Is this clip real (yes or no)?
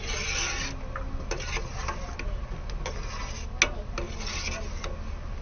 yes